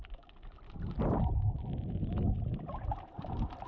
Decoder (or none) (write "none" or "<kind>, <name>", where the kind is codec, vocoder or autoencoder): vocoder, BigVGAN v2